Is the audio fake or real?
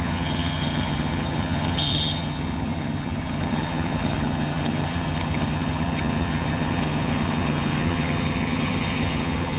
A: fake